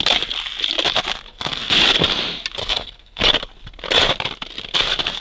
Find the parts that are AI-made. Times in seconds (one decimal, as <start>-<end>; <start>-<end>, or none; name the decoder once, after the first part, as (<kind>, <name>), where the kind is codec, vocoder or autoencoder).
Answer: 1.3-1.8 (codec, SNAC); 2.6-3.2